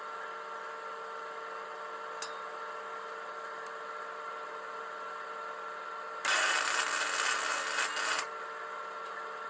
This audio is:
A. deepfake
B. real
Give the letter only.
B